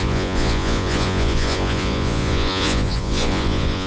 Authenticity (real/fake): fake